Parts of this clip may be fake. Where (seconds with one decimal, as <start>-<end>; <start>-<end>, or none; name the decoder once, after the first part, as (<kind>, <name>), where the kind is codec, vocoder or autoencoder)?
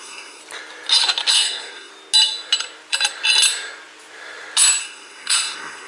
0.0-0.4 (codec, SNAC); 1.3-1.9; 4.8-5.9